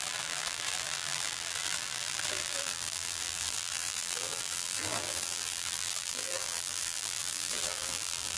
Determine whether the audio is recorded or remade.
remade